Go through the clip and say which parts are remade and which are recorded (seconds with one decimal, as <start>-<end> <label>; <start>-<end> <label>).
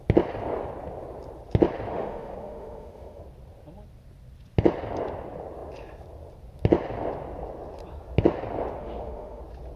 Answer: 0.0-1.9 recorded; 1.9-3.2 remade; 3.2-8.8 recorded; 8.8-9.4 remade; 9.4-9.8 recorded